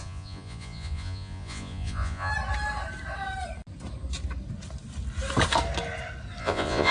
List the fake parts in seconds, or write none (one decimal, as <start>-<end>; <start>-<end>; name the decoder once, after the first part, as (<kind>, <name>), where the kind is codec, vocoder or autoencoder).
0.0-2.3 (vocoder, Vocos); 6.4-6.9